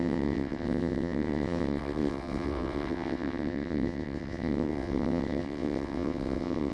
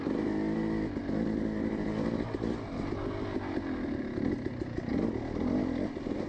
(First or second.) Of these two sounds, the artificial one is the first